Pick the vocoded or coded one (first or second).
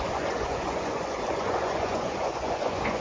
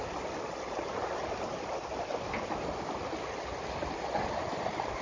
first